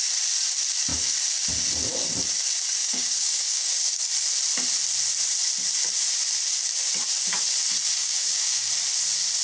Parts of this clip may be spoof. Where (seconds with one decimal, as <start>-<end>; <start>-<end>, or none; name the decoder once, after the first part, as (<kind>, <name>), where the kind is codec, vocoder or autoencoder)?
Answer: 2.8-4.0 (codec, DAC); 8.0-8.7